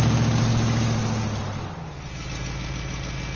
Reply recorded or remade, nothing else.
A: recorded